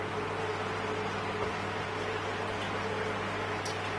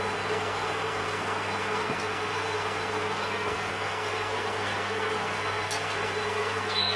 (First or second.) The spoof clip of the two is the second